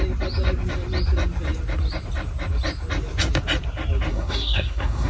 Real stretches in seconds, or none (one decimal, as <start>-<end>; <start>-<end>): 0.0-4.1